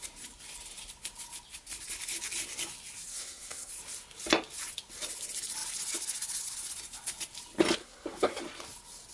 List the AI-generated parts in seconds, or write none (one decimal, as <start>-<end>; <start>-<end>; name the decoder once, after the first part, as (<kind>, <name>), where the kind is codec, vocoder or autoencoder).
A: 3.1-3.7 (codec, SNAC); 7.8-8.4